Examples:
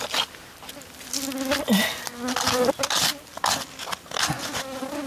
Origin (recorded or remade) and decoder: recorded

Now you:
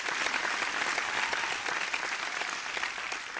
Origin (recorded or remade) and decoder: recorded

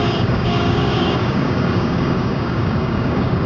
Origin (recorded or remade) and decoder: remade, codec, DAC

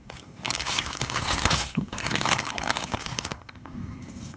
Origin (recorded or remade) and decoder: remade, codec, SNAC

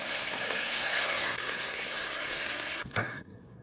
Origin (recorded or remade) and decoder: remade, codec, SNAC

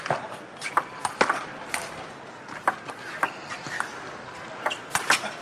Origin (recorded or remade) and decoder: recorded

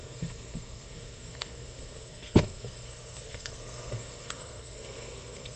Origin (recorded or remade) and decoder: remade, codec, SNAC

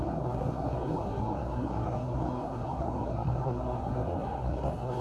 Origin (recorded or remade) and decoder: remade, codec, SNAC